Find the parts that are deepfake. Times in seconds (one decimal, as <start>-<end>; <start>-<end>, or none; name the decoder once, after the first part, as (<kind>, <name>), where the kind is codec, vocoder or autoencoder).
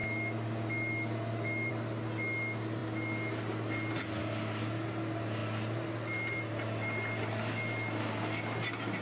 none